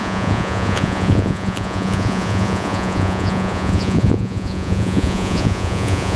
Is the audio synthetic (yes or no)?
yes